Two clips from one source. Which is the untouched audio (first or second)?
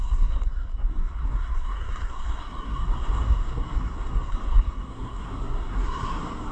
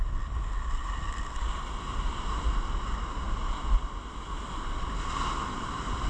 second